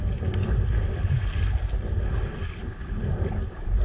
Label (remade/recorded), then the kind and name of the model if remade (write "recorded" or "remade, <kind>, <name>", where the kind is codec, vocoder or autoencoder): recorded